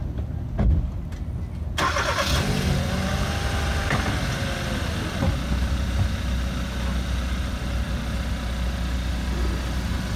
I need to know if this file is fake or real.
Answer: real